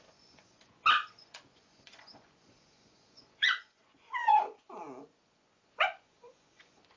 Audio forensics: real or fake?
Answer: fake